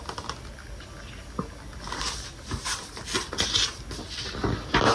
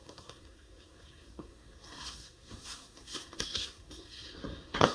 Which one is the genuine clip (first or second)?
first